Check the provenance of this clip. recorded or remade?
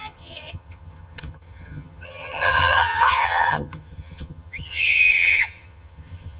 remade